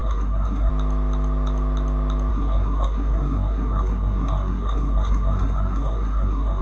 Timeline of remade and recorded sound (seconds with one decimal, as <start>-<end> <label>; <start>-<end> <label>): 0.0-0.7 remade; 0.7-2.3 recorded; 2.3-6.6 remade